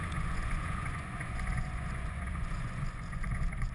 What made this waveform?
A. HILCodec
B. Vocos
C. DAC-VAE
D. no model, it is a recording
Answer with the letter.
B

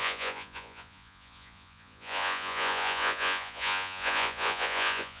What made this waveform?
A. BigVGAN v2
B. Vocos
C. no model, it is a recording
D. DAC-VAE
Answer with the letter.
B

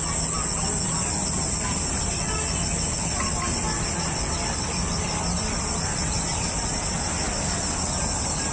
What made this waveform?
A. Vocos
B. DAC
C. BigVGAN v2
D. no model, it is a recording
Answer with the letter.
D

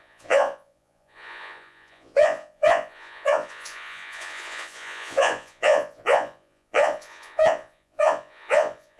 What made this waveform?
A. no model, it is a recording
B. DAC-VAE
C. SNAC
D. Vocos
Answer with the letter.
D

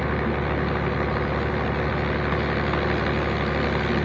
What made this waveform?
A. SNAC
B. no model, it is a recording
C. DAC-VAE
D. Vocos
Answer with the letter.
B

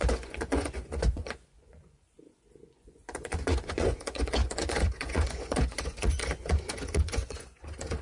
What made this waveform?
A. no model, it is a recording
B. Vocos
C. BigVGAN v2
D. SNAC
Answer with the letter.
B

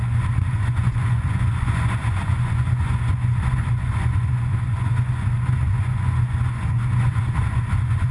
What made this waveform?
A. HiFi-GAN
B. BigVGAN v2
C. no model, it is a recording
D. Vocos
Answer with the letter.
D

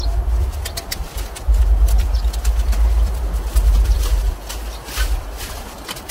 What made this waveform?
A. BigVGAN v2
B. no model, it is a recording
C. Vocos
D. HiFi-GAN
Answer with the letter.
B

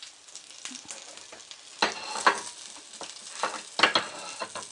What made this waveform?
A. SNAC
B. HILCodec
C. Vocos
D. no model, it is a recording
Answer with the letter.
D